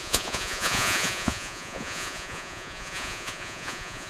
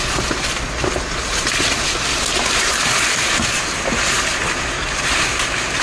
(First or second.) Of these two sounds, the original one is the second